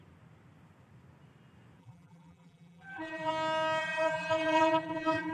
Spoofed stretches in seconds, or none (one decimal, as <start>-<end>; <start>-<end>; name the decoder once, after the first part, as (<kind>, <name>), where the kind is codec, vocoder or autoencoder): 1.8-3.3 (vocoder, BigVGAN v2); 3.8-5.3